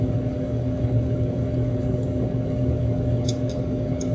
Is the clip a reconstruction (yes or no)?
yes